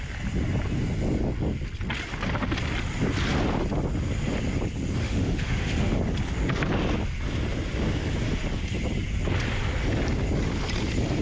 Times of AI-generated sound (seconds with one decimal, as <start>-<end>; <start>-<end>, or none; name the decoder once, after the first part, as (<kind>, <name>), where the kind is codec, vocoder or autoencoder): 5.0-6.0 (autoencoder, DAC-VAE)